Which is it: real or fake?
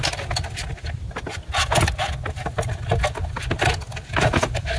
real